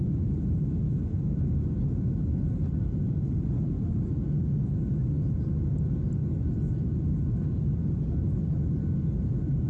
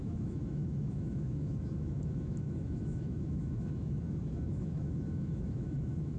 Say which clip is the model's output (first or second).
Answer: second